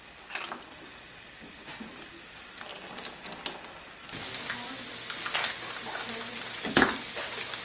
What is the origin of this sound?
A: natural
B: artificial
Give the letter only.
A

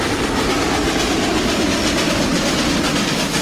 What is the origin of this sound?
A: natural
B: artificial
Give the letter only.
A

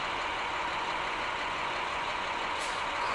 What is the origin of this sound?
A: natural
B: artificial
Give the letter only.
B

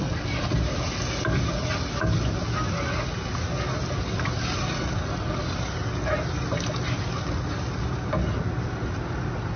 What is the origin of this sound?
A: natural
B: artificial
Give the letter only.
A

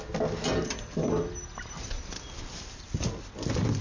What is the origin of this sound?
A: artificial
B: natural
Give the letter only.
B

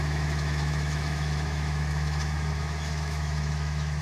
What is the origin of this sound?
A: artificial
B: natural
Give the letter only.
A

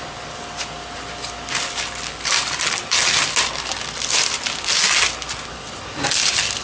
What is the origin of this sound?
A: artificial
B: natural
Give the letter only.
B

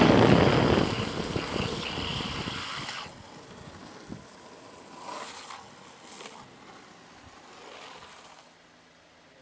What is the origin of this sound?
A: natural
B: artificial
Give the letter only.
A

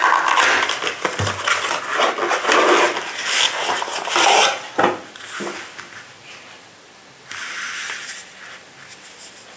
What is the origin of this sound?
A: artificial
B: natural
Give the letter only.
B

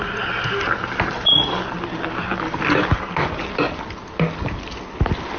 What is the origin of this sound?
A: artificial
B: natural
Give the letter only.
B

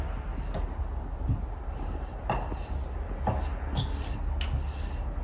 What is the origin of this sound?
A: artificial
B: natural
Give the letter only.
B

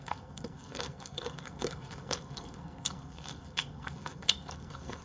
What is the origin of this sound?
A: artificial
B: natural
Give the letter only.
A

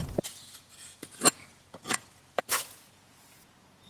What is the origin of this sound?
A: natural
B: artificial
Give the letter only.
B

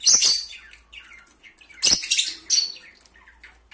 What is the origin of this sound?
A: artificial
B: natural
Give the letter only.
B